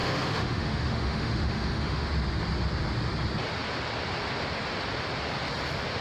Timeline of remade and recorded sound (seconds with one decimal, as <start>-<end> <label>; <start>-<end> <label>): 0.0-2.1 remade; 2.1-6.0 recorded